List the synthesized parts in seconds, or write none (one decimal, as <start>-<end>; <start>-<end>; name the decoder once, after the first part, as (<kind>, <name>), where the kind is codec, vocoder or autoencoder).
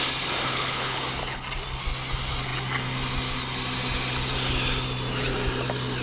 0.5-1.0 (codec, HILCodec)